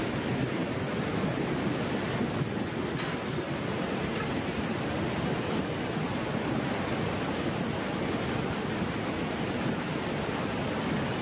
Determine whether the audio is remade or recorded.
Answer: recorded